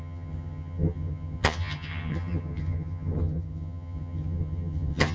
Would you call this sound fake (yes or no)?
yes